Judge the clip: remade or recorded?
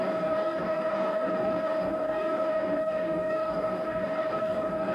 remade